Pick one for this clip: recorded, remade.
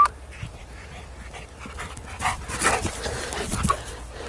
recorded